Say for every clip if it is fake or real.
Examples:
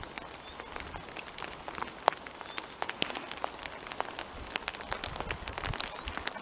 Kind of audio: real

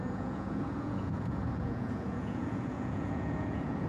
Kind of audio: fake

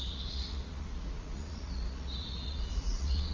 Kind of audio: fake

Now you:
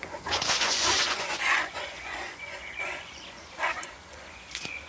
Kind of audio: fake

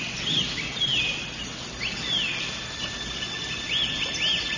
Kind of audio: real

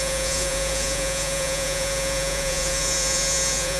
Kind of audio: fake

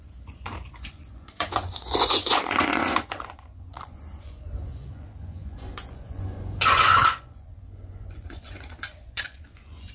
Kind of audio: fake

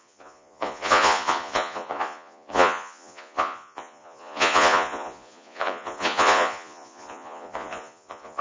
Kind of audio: fake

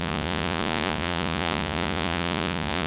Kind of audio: fake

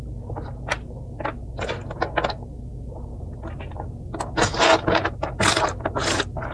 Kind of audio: real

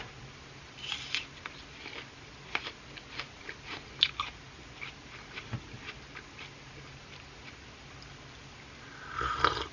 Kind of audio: real